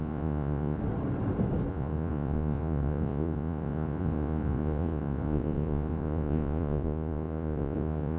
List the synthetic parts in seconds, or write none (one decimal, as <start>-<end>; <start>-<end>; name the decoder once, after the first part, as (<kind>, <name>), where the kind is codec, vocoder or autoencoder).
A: 0.0-0.8 (vocoder, Vocos); 1.7-8.2